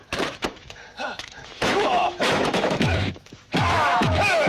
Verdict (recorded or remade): remade